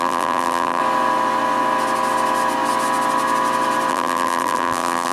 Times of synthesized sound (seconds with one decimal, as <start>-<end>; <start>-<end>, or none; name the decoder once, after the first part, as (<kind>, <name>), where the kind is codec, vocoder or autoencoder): 0.0-0.8 (vocoder, BigVGAN v2); 3.9-5.1